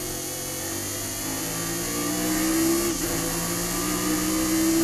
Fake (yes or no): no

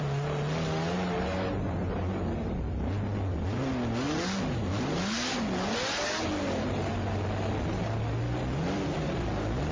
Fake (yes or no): no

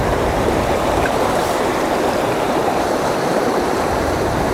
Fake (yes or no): yes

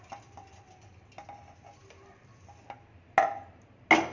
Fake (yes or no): no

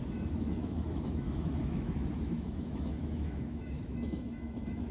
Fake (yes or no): yes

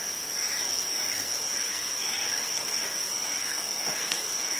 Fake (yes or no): yes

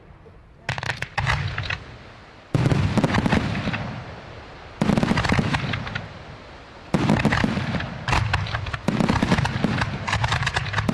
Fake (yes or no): no